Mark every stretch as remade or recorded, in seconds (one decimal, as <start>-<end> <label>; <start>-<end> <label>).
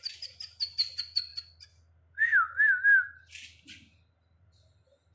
0.0-5.1 recorded